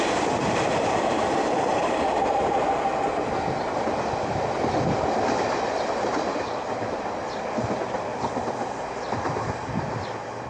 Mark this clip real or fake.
fake